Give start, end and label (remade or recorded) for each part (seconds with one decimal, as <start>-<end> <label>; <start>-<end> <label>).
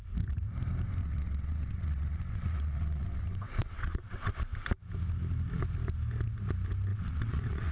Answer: 0.0-1.0 recorded; 1.0-4.3 remade; 4.3-6.9 recorded; 6.9-7.7 remade